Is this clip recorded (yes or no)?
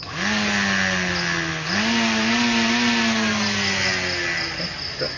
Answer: yes